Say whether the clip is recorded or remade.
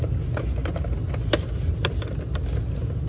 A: recorded